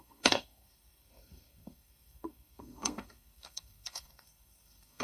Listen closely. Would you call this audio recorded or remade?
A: remade